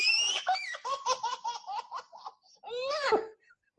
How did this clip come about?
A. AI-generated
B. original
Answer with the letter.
A